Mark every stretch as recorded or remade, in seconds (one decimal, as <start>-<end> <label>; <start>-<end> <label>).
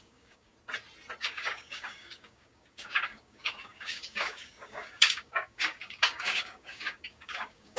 0.0-0.5 remade; 0.5-1.2 recorded; 1.2-7.8 remade